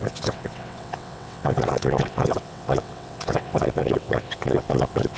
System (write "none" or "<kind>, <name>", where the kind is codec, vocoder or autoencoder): vocoder, WaveNeXt